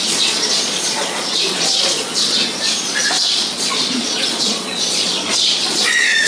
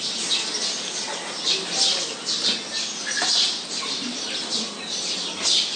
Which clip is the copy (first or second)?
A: first